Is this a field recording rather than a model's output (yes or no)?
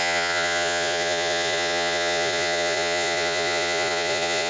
no